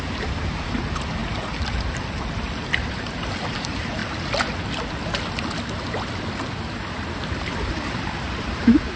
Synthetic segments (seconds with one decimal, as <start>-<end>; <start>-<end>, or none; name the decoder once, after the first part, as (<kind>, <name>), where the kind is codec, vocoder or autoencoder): 0.0-1.2 (vocoder, BigVGAN v2); 2.9-4.0; 6.9-9.0

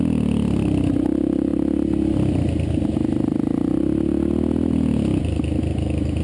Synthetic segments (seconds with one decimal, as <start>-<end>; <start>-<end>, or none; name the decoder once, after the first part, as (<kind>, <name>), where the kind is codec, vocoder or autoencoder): none

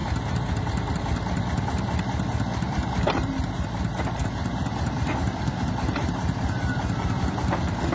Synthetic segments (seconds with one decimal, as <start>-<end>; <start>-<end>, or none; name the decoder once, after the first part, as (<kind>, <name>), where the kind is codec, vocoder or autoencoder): 0.0-0.9 (vocoder, BigVGAN v2); 2.5-7.2